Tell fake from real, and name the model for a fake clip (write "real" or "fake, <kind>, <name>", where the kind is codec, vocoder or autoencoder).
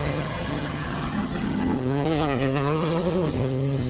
fake, vocoder, HiFi-GAN